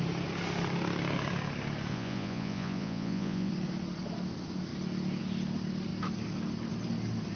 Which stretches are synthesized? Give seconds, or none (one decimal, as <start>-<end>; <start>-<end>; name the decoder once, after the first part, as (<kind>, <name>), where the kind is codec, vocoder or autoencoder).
1.9-3.5 (vocoder, Vocos)